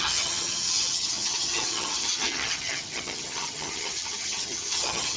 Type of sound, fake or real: fake